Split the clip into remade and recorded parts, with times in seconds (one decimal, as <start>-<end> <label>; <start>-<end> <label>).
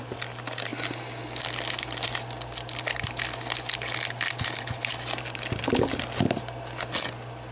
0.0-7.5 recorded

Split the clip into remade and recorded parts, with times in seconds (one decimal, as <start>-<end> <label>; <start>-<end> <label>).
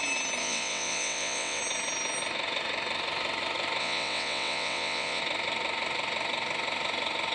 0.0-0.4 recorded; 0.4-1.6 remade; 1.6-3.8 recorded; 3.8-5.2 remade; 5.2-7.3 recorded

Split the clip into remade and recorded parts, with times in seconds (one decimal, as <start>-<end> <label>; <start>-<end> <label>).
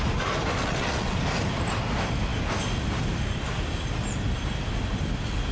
0.0-0.5 recorded; 0.5-1.2 remade; 1.2-5.5 recorded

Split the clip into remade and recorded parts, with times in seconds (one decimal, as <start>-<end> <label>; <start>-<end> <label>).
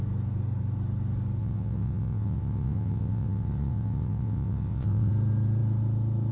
0.0-1.4 recorded; 1.4-5.1 remade; 5.1-6.3 recorded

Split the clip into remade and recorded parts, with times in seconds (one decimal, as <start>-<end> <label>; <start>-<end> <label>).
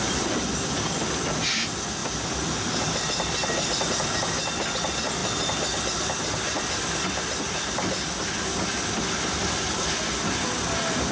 0.0-11.1 recorded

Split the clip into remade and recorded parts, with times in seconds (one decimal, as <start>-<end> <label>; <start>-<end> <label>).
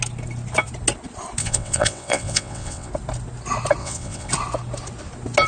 0.0-1.4 recorded; 1.4-2.9 remade; 2.9-3.8 recorded; 3.8-4.3 remade; 4.3-5.5 recorded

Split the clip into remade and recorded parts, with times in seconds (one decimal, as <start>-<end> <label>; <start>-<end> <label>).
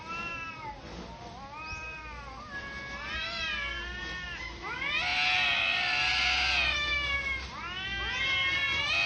0.0-9.1 recorded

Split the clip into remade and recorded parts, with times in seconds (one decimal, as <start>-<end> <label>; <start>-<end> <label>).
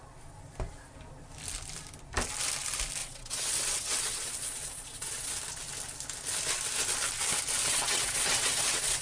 0.0-3.0 recorded; 3.0-5.4 remade; 5.4-7.6 recorded; 7.6-9.0 remade